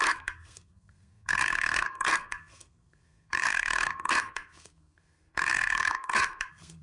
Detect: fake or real fake